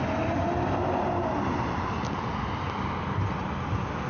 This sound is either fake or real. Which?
real